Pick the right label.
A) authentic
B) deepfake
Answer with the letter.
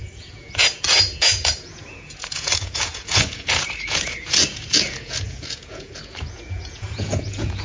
B